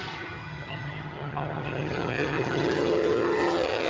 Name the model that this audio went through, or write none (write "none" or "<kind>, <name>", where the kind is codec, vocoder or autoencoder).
vocoder, HiFi-GAN